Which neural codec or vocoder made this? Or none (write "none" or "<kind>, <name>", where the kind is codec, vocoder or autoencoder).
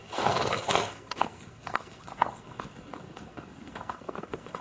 codec, SNAC